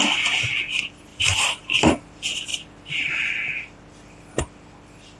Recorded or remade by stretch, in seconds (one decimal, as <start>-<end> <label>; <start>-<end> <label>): 0.0-1.1 recorded; 1.1-1.6 remade; 1.6-2.5 recorded; 2.5-3.3 remade; 3.3-5.2 recorded